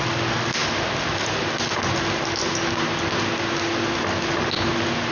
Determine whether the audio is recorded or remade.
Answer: recorded